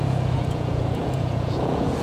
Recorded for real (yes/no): no